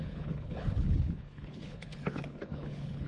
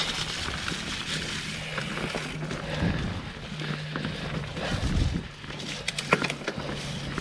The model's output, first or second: first